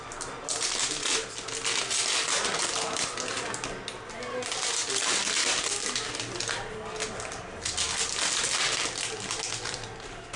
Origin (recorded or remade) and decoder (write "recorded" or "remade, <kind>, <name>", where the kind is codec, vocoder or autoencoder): recorded